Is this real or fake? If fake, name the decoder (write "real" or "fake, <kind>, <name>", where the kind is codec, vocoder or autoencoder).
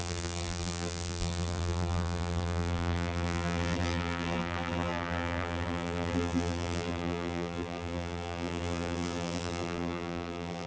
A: fake, vocoder, BigVGAN v2